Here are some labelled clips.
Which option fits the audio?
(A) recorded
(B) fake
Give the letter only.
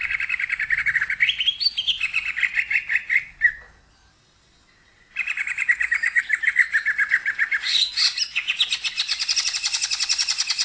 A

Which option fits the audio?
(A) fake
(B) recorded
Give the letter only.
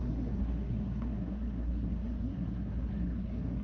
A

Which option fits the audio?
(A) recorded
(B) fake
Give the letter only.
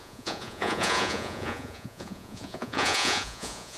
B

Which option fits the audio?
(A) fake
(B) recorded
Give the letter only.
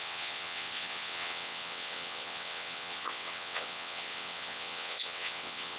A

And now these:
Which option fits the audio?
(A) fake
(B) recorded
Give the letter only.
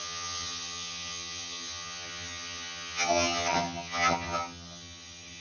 A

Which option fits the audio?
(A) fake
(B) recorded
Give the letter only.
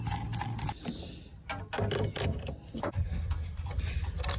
B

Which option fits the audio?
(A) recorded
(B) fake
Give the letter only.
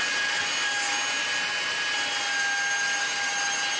A